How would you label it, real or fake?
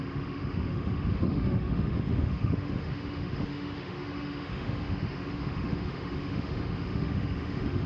fake